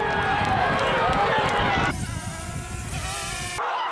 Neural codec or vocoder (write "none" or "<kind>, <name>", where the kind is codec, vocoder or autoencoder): none